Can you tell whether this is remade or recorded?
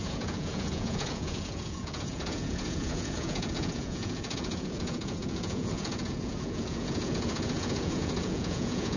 remade